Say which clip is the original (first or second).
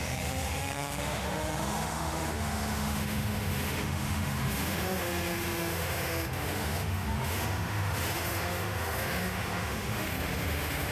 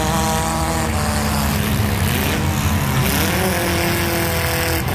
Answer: second